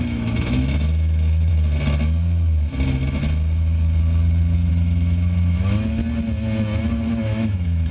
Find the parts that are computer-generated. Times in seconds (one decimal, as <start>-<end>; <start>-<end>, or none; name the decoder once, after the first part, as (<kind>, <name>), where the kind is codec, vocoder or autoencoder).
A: 0.0-1.5 (autoencoder, DAC-VAE); 4.7-6.0; 7.1-7.9